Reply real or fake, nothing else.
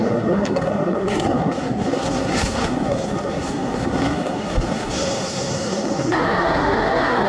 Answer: fake